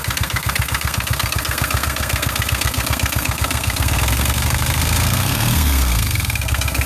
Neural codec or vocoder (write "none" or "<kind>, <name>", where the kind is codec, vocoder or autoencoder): codec, SNAC